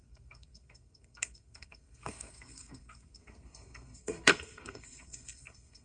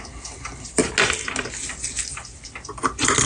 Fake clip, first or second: first